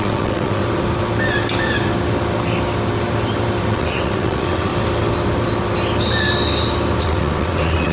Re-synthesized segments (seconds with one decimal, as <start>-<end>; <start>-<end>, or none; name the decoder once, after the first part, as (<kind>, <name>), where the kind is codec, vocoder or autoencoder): 0.0-0.6 (vocoder, WaveNeXt); 3.7-4.7; 7.0-7.9